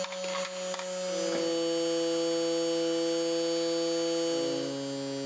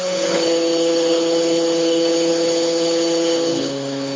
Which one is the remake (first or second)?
second